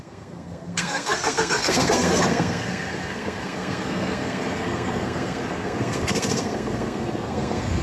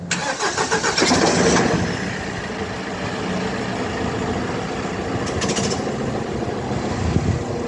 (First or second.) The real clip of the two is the second